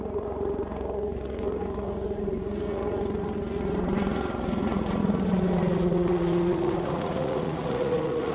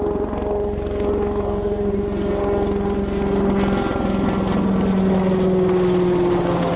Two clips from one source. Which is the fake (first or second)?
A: first